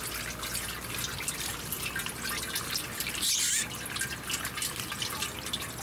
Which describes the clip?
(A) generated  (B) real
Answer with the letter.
B